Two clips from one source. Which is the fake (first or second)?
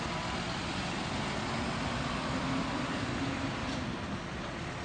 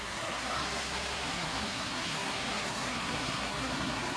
second